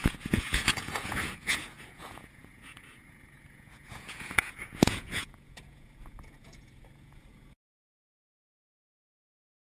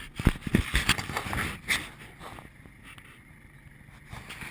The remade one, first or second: first